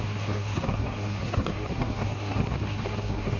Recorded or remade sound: remade